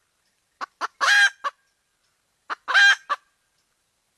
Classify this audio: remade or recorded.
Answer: recorded